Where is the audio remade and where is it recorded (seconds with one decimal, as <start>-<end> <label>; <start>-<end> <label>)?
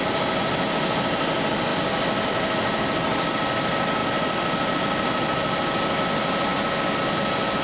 0.0-7.6 recorded